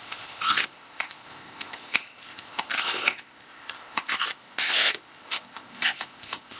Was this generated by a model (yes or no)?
yes